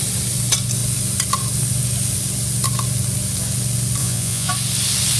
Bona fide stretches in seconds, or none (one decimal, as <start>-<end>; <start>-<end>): 0.0-4.0; 4.5-5.2